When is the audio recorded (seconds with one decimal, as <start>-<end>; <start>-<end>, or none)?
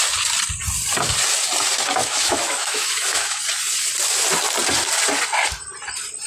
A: 0.0-2.0; 3.4-6.3